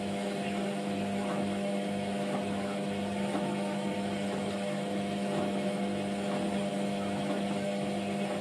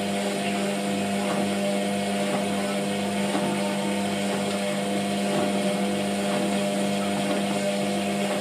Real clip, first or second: second